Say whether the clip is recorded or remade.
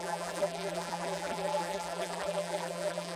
remade